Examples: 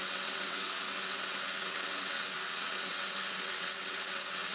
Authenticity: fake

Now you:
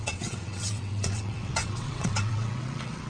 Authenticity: fake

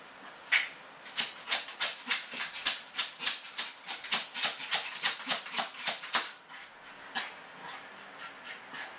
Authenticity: real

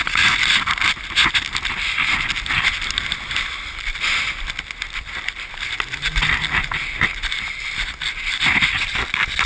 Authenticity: real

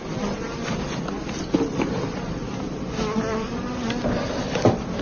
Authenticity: real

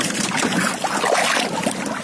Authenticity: real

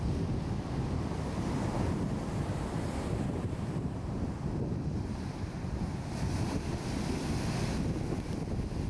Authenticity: real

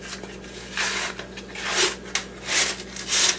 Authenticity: real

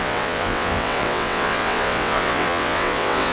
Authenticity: fake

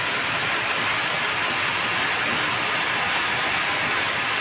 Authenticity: real